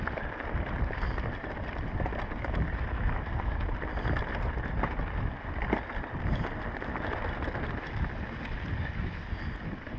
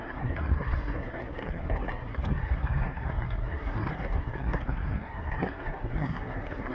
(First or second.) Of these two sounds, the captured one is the first